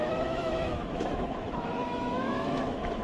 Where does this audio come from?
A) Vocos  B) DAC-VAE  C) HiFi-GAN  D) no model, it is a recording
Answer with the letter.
B